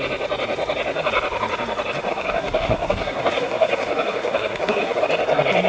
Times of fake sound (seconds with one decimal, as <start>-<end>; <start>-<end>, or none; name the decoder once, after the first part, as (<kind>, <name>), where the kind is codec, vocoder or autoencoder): 2.1-5.0 (codec, SNAC)